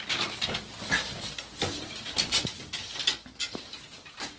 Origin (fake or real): real